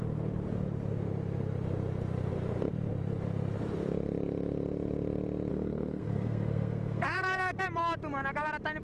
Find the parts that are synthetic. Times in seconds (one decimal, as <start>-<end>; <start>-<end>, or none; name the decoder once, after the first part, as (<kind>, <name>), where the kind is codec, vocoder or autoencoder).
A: 5.5-7.6 (codec, SNAC)

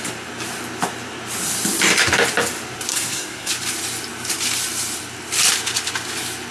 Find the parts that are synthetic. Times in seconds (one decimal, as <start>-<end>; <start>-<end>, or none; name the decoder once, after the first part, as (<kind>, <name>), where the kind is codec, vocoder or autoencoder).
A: 2.9-3.5 (codec, SNAC)

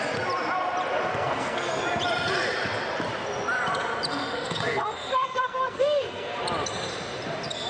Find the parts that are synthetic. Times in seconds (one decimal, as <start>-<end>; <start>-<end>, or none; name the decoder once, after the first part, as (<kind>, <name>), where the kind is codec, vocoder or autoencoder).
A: 1.1-1.8 (codec, SNAC); 4.1-6.4

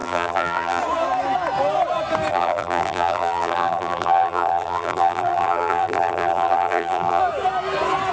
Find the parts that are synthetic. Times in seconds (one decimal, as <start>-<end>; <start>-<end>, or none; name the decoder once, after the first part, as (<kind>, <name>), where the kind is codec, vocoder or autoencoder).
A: 0.0-0.8 (vocoder, BigVGAN v2); 2.3-7.2

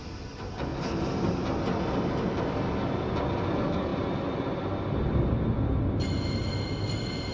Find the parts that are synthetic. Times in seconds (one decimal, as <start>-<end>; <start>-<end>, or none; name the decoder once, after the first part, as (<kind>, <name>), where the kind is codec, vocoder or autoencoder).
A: none

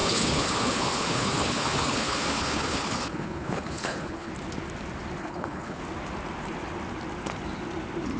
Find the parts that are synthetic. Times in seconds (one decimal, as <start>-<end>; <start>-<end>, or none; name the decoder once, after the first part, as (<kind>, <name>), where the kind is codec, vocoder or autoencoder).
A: 0.0-4.3 (codec, HILCodec); 5.2-5.8

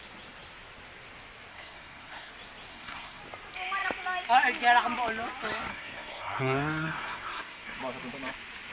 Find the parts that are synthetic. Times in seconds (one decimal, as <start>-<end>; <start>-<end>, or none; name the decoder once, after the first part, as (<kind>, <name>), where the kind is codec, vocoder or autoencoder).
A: 1.5-2.3 (codec, SNAC); 2.7-3.2; 5.7-7.8

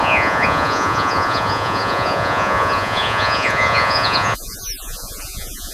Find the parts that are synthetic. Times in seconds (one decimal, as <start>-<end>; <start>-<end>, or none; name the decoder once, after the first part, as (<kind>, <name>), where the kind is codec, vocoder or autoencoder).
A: 0.0-5.7 (vocoder, Vocos)